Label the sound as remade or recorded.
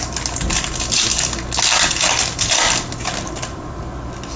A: recorded